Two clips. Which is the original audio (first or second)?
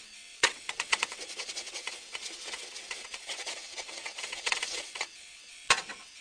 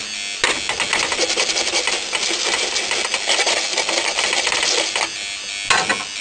second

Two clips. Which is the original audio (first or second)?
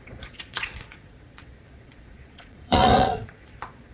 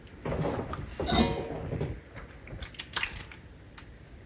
second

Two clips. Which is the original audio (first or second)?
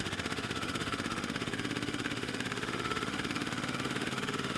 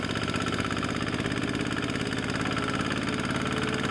second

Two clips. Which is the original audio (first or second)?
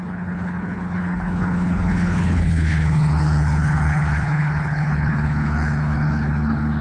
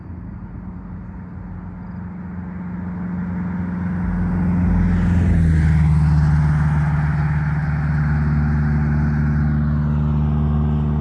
second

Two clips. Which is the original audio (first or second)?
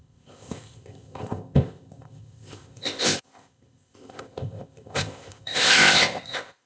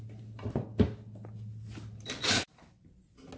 second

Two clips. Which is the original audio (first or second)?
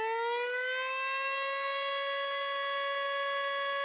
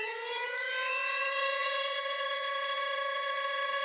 first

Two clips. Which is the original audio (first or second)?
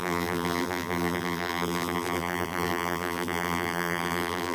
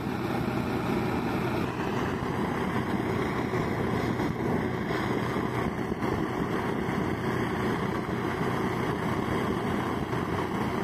second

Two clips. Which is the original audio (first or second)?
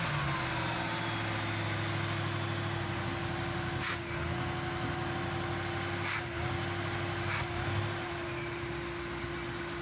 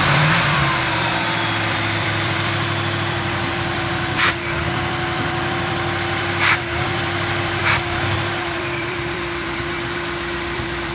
first